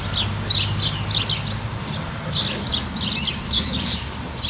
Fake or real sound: real